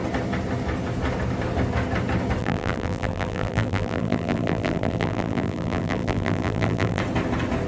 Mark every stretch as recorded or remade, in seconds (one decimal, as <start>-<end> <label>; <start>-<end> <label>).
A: 0.0-2.4 recorded; 2.4-7.0 remade; 7.0-7.7 recorded